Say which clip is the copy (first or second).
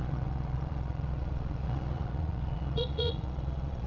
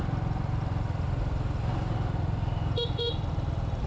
first